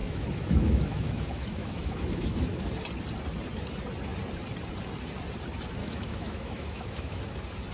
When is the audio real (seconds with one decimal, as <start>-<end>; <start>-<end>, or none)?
2.7-5.8; 7.2-7.7